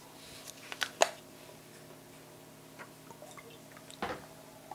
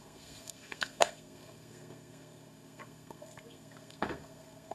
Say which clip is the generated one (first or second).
second